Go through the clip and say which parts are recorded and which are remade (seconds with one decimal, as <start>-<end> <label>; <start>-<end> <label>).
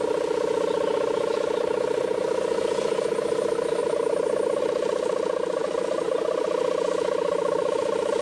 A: 0.0-3.8 recorded; 3.8-4.6 remade; 4.6-5.6 recorded; 5.6-6.3 remade; 6.3-8.2 recorded